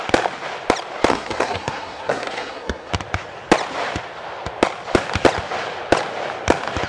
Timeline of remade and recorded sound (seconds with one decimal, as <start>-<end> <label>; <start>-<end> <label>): 0.0-1.1 recorded; 1.1-2.9 remade; 2.9-6.9 recorded